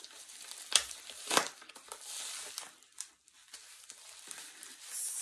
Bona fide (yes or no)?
yes